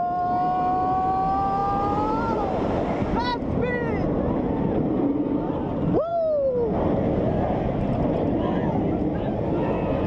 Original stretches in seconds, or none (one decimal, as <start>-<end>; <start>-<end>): 0.0-10.1